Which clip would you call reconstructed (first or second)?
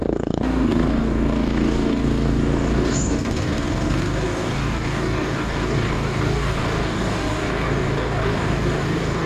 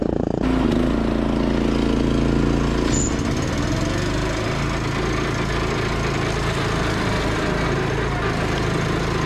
first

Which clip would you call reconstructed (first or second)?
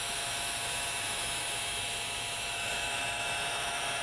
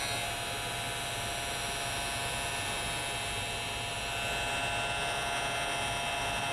first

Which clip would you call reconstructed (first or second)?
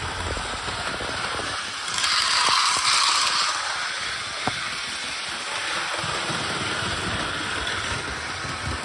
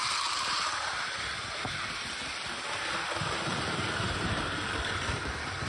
second